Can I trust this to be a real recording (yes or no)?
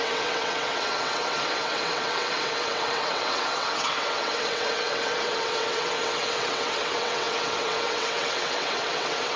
no